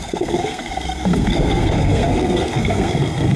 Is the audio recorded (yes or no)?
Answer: no